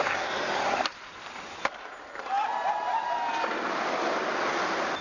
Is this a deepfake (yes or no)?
no